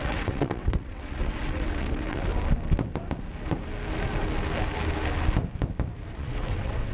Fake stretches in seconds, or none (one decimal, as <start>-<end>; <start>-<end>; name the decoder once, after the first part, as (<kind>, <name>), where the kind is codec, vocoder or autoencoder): 0.0-2.3 (vocoder, WaveNeXt); 6.1-6.9